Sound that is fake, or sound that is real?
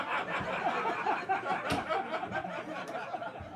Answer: fake